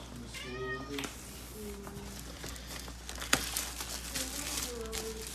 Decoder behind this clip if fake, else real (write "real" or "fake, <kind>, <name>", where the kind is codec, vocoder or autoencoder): real